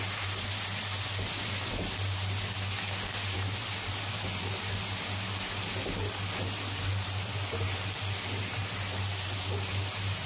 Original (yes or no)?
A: yes